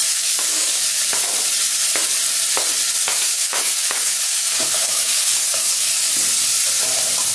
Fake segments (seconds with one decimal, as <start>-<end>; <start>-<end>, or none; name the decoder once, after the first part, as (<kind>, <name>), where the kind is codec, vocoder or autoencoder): 0.0-1.0 (codec, DAC); 3.1-6.1